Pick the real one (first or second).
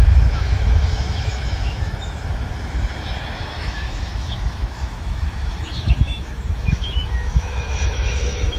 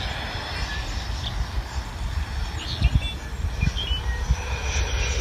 second